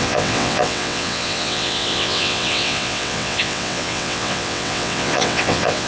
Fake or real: fake